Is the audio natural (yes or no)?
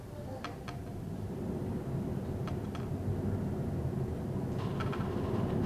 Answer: yes